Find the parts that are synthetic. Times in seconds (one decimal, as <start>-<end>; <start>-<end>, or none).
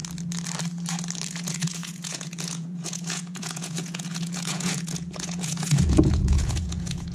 1.3-7.1